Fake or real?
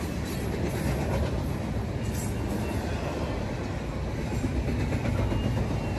real